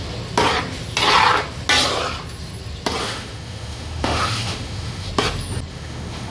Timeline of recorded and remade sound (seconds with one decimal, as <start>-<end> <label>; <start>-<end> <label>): 0.0-3.0 recorded; 3.0-5.1 remade; 5.1-5.7 recorded; 5.7-6.3 remade